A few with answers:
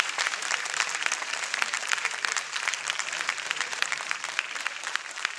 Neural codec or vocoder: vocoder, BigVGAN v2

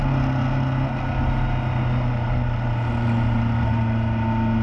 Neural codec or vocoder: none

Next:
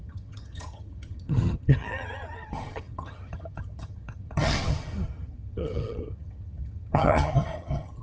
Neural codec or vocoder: vocoder, HiFi-GAN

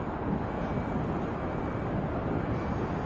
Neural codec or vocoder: none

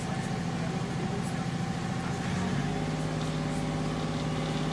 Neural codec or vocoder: none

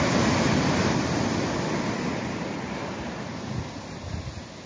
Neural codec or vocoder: none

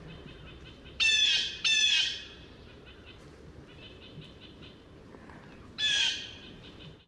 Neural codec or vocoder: vocoder, BigVGAN v2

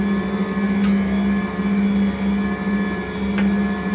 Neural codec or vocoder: none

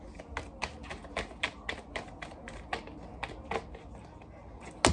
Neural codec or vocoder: none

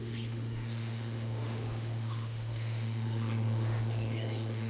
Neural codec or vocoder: autoencoder, DAC-VAE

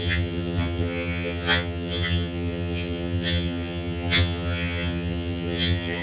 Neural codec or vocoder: vocoder, HiFi-GAN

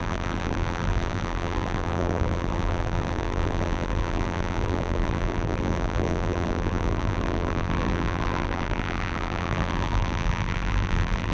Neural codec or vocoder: vocoder, BigVGAN v2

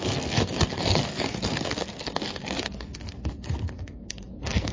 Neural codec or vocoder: codec, SNAC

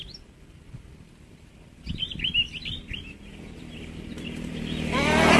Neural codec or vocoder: vocoder, BigVGAN v2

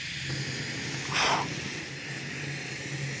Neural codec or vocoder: none